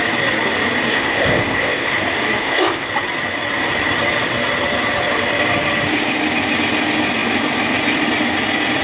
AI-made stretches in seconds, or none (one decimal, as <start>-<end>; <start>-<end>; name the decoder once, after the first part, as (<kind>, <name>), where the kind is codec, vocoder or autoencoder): 0.9-1.9 (codec, ZipCodec); 2.4-2.9